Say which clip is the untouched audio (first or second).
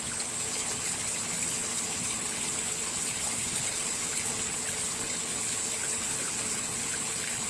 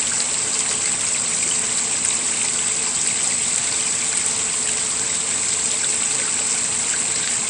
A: second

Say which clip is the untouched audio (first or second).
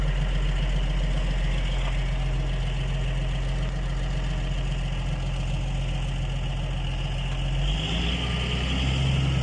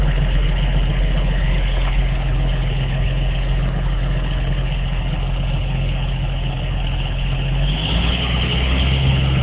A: first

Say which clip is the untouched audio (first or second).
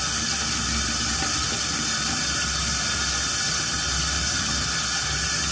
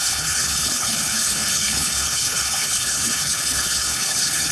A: first